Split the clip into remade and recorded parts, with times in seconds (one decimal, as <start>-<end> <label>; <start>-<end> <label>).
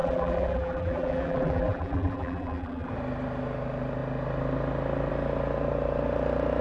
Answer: 0.0-2.9 remade; 2.9-6.6 recorded